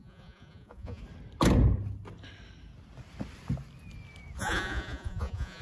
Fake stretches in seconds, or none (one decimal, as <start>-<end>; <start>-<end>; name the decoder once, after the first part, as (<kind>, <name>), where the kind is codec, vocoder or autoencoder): 0.0-1.0 (vocoder, Vocos); 4.4-5.6